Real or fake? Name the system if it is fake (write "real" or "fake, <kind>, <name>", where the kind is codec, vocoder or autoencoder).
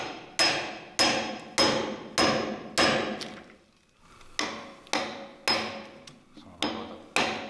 real